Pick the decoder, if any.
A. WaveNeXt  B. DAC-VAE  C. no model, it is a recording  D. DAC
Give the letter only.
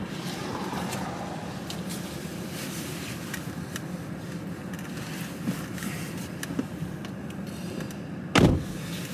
C